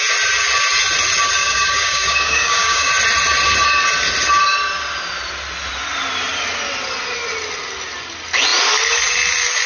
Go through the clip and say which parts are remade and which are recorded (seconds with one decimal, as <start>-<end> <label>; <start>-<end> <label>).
0.0-1.4 recorded; 1.4-2.9 remade; 2.9-9.7 recorded